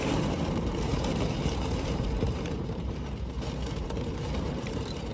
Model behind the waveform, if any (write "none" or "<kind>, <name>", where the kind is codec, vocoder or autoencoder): vocoder, BigVGAN v2